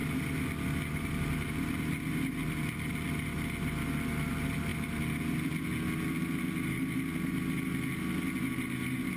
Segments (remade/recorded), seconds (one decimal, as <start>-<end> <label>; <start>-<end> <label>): 0.0-9.2 recorded